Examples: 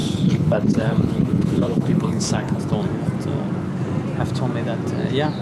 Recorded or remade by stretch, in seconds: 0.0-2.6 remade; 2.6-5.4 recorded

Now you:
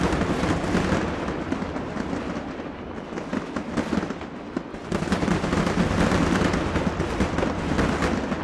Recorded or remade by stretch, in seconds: 0.0-8.4 recorded

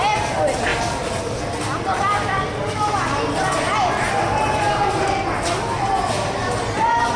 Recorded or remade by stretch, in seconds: 0.0-7.2 recorded

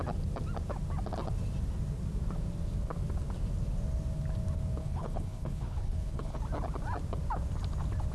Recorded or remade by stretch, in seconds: 0.0-4.8 recorded; 4.8-6.4 remade; 6.4-8.1 recorded